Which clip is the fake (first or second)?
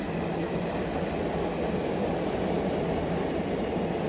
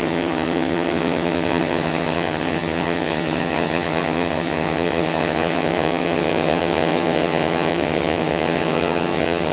second